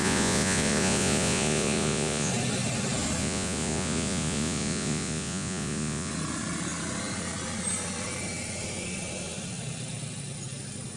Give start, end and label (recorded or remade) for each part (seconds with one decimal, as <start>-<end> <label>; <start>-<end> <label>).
0.0-2.3 remade; 2.3-3.2 recorded; 3.2-6.1 remade; 6.1-11.0 recorded